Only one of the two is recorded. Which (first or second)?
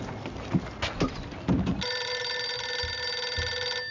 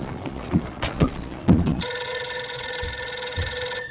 first